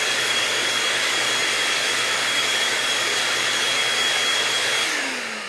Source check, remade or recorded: remade